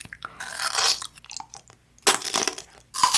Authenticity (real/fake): real